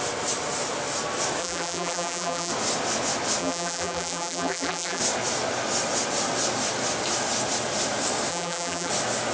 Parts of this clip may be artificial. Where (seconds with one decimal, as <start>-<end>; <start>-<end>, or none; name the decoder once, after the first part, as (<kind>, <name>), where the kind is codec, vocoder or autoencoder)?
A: 1.4-2.5 (vocoder, BigVGAN v2); 3.4-5.0; 8.3-8.9